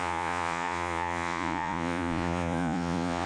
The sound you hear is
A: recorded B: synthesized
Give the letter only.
B